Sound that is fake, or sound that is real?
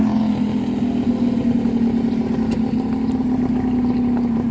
real